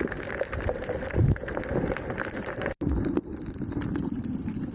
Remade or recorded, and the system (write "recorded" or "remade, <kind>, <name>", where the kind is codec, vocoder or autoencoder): remade, vocoder, BigVGAN v2